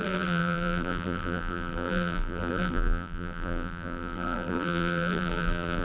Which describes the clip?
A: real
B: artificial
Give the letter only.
B